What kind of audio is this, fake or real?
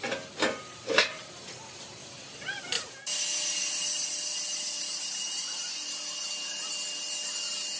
real